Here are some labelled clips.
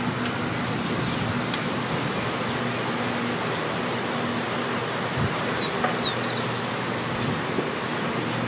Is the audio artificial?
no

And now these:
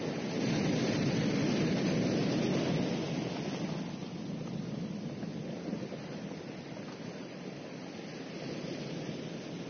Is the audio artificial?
no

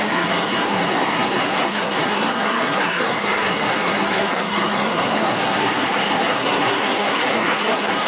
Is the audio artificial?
yes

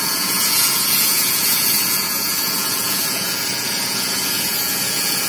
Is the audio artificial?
yes